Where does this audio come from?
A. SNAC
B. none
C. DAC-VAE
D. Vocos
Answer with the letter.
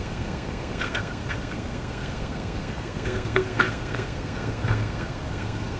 A